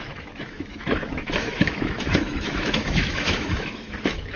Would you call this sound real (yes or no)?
no